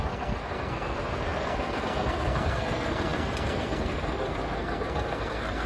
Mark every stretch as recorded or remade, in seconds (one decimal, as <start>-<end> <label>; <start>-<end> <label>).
0.0-5.7 remade